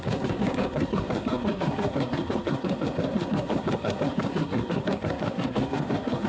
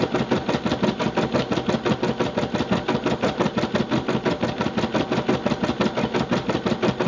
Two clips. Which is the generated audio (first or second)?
first